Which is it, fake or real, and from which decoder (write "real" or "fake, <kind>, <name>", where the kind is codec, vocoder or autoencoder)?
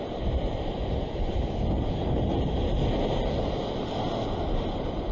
real